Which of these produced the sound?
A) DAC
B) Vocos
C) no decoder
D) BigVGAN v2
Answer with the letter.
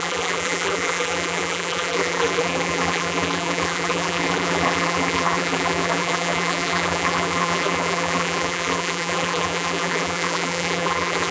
D